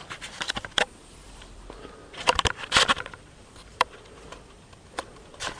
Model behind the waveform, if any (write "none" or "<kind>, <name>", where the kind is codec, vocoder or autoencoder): vocoder, BigVGAN v2